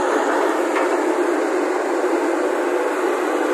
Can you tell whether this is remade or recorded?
recorded